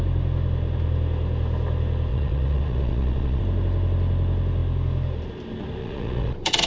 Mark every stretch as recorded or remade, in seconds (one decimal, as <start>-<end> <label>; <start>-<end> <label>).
0.0-2.1 recorded; 2.1-3.4 remade; 3.4-5.8 recorded; 5.8-6.7 remade